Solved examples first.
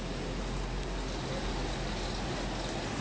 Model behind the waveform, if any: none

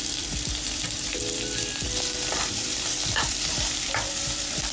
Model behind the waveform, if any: vocoder, BigVGAN v2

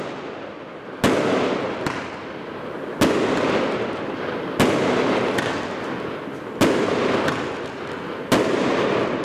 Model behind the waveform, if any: none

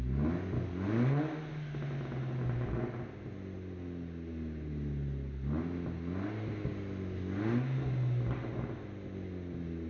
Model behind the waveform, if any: none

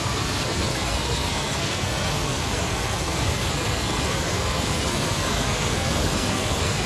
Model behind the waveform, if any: codec, SNAC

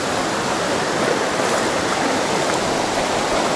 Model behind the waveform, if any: none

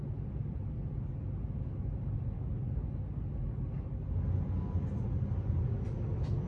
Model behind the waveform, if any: none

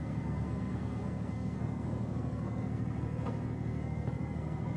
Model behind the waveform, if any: codec, SNAC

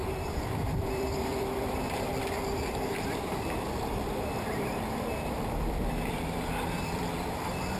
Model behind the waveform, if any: vocoder, BigVGAN v2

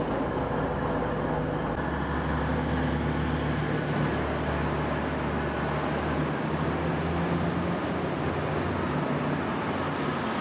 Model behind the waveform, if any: none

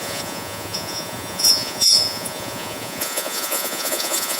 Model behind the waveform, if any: vocoder, Vocos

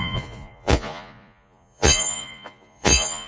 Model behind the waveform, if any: vocoder, Vocos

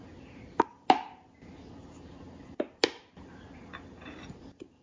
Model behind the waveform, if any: none